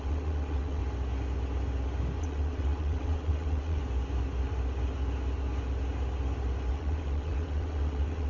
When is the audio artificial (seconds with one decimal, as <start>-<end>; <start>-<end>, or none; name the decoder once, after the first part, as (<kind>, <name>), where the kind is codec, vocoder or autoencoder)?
0.0-0.8 (vocoder, WaveNeXt); 2.2-3.8; 6.7-8.3